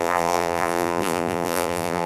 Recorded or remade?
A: remade